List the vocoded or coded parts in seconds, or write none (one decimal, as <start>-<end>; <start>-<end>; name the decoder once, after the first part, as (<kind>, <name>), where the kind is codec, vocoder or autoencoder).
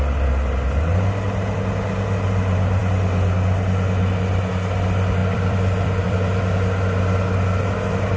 5.2-6.4 (vocoder, BigVGAN v2)